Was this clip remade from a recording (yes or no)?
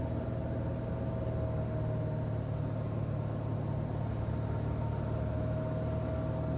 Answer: no